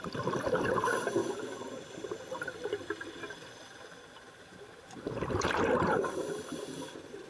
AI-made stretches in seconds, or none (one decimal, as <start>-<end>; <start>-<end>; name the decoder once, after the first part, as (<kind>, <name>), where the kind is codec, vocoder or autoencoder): 1.2-5.6 (vocoder, BigVGAN v2)